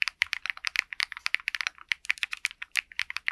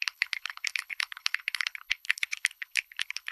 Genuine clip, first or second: first